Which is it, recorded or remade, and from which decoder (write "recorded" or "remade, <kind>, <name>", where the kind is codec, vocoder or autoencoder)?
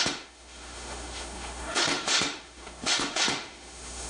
remade, autoencoder, DAC-VAE